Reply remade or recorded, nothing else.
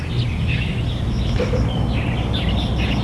recorded